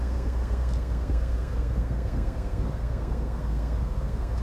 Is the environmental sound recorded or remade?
remade